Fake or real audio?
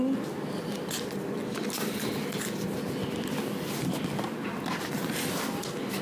real